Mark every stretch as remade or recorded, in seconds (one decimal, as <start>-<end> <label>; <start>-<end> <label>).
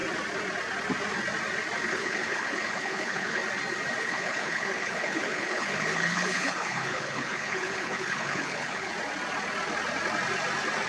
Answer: 0.0-1.9 recorded; 1.9-3.4 remade; 3.4-4.0 recorded; 4.0-8.9 remade; 8.9-10.9 recorded